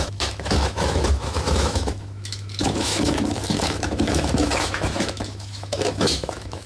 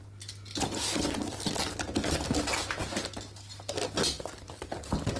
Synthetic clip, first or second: first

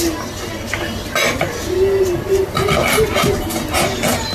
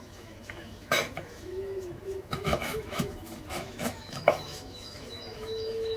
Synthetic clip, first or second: second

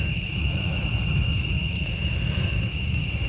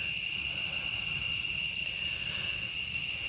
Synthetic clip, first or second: first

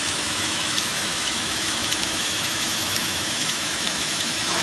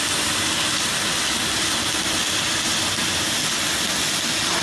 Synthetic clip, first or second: first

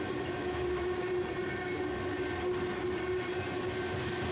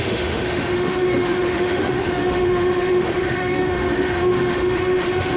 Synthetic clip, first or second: second